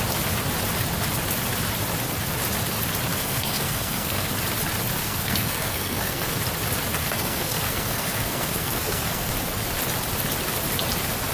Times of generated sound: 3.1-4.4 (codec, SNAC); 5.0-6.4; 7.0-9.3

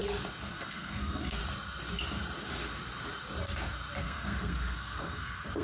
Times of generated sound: 0.5-1.4 (codec, SNAC); 4.0-5.6

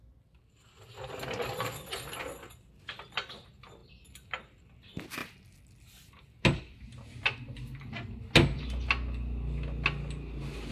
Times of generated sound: none

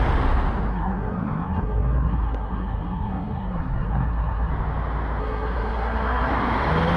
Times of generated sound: 0.7-4.5 (codec, SNAC); 5.2-6.3

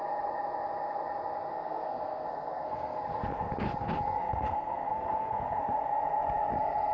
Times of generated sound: 1.5-3.0 (codec, SNAC); 4.2-5.6